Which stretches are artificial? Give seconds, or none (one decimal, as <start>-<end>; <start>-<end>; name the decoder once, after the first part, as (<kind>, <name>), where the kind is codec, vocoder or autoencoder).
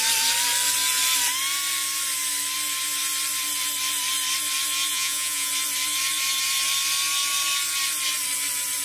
4.9-5.5 (vocoder, Vocos)